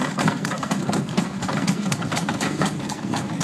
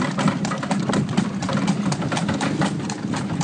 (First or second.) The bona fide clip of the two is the second